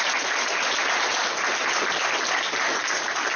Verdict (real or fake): real